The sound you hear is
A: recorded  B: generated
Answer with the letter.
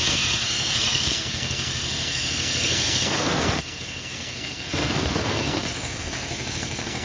B